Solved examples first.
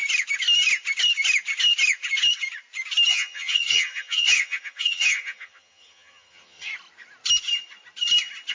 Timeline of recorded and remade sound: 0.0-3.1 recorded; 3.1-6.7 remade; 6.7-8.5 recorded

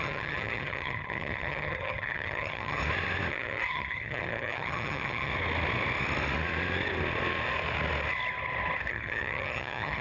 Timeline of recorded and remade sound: 0.0-2.8 remade; 2.8-3.3 recorded; 3.3-5.3 remade; 5.3-8.9 recorded; 8.9-10.0 remade

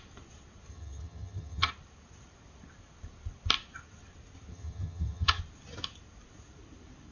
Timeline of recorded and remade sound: 0.0-0.7 recorded; 0.7-1.7 remade; 1.7-4.5 recorded; 4.5-5.4 remade; 5.4-7.1 recorded

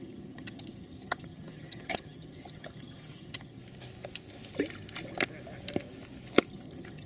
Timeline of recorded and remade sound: 0.0-3.6 remade; 3.6-6.5 recorded; 6.5-7.1 remade

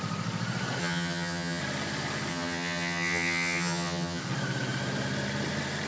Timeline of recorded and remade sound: 0.0-0.8 recorded; 0.8-1.6 remade; 1.6-2.3 recorded; 2.3-4.2 remade; 4.2-5.9 recorded